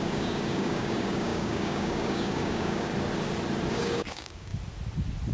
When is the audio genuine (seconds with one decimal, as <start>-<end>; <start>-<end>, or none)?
2.9-3.7; 4.5-5.3